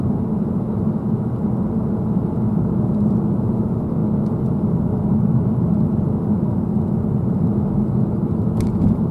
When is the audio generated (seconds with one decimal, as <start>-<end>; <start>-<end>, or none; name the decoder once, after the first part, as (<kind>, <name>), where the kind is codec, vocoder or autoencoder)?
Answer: none